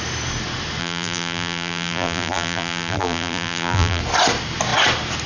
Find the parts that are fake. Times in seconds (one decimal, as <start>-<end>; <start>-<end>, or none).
0.8-4.0